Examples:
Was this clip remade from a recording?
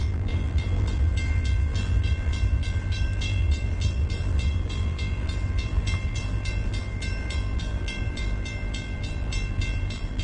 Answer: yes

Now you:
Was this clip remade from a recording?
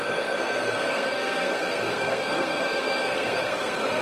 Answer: yes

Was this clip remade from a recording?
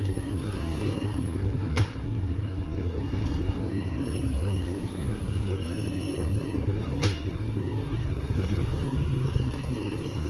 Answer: yes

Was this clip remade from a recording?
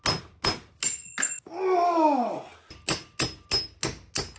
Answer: no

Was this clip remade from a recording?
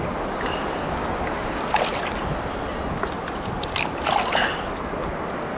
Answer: no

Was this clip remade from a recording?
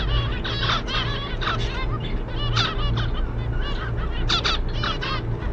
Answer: no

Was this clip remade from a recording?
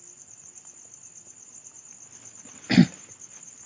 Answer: no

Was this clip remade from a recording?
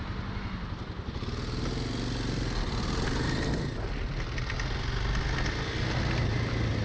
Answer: no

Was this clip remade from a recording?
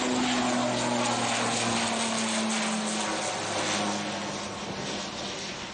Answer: no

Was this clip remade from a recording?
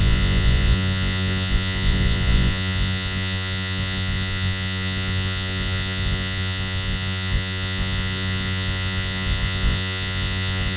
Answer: yes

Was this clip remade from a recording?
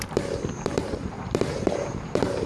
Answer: yes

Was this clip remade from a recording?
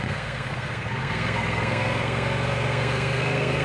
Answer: yes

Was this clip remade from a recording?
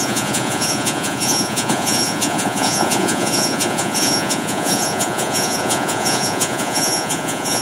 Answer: yes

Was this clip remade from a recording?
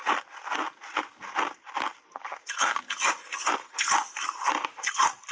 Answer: no